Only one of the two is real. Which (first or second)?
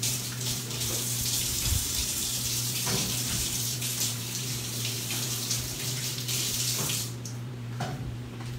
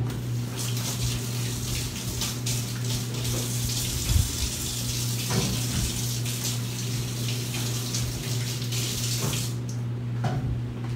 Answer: second